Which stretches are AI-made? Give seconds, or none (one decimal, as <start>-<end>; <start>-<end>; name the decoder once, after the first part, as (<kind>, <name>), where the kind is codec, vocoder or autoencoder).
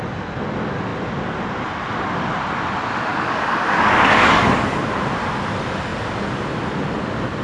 3.1-4.8 (codec, DAC)